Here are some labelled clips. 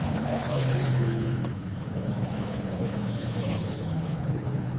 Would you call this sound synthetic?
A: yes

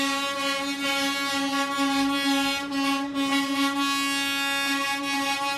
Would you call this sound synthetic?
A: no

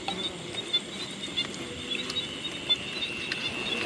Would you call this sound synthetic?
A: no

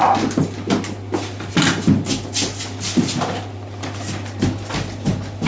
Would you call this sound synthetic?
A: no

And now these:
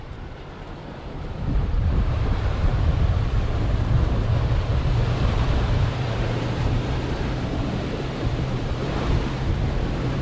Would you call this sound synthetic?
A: yes